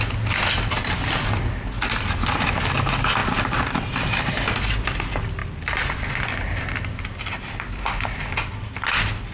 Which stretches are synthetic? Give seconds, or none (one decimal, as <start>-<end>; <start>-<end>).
3.2-4.3; 5.4-6.1

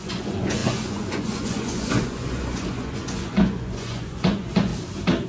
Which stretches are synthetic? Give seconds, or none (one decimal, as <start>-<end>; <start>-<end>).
0.0-4.7

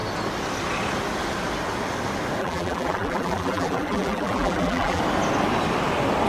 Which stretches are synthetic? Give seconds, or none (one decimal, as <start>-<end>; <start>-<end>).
2.4-5.0

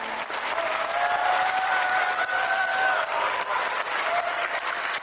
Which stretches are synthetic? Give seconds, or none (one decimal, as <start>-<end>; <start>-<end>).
1.6-4.6

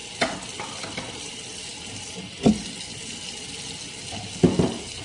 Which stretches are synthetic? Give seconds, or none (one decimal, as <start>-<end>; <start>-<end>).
none

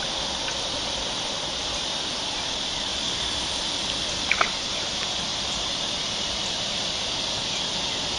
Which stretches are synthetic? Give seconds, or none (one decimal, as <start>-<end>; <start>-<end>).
2.9-4.4; 5.3-7.1

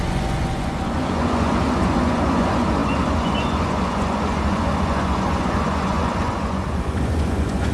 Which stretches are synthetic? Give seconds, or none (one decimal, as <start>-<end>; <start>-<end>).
0.0-7.7